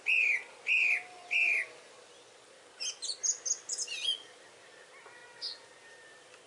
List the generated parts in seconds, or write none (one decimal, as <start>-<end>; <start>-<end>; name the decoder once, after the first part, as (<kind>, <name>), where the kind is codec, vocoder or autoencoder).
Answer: none